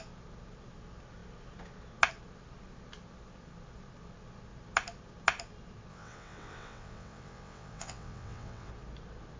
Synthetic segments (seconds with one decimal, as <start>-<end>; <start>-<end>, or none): 5.9-8.7